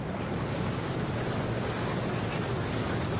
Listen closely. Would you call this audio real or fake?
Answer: real